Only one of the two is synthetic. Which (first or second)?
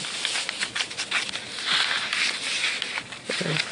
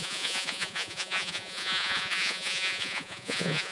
second